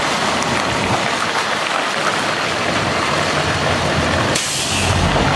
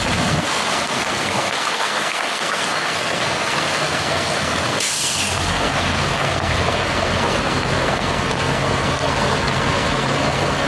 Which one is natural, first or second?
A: first